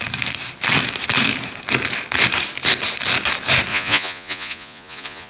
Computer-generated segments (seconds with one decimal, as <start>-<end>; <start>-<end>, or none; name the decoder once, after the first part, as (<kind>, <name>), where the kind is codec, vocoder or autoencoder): 3.7-5.3 (vocoder, Vocos)

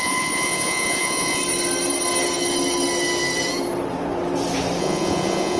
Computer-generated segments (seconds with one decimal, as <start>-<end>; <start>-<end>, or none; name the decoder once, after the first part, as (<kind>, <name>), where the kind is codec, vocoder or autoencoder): 0.0-1.4 (vocoder, Vocos); 4.8-5.6

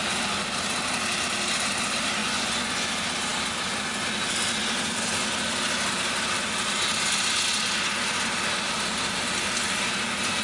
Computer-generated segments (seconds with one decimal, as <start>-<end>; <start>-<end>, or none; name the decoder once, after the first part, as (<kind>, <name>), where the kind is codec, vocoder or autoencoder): 2.2-2.9 (vocoder, Vocos)